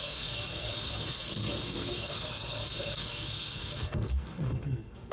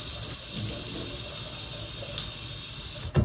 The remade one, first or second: first